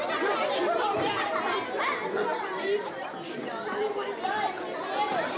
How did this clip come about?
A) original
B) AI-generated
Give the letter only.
A